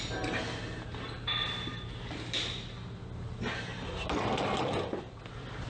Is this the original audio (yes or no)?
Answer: yes